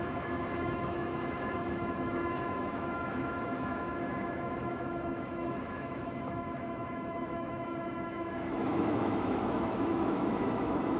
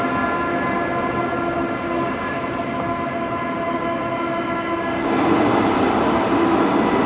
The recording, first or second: second